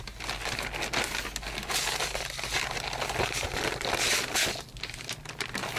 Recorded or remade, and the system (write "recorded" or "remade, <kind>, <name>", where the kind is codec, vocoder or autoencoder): recorded